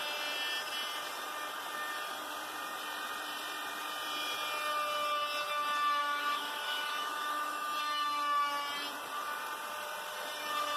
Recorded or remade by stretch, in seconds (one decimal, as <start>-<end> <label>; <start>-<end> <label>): 0.0-6.0 recorded; 6.0-7.8 remade; 7.8-10.8 recorded